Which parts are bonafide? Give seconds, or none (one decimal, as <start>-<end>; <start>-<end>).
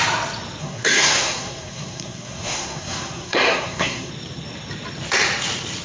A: 0.0-0.6; 4.1-5.8